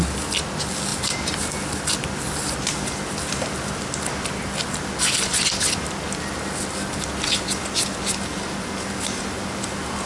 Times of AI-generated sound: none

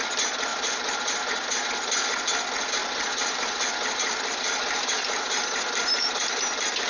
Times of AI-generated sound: 0.5-1.7 (vocoder, BigVGAN v2); 2.8-6.9

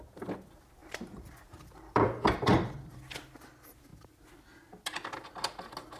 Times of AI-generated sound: 0.8-2.0 (vocoder, BigVGAN v2); 2.5-3.2

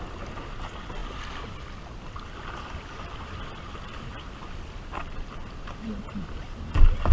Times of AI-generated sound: none

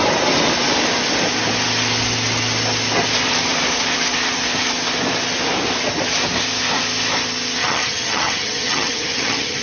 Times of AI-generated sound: 7.6-9.6 (vocoder, HiFi-GAN)

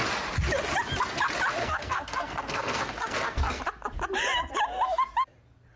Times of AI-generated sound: 1.6-3.6 (codec, SNAC)

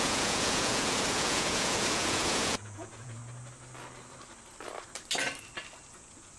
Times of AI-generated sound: 0.0-3.2 (vocoder, Vocos); 5.9-6.4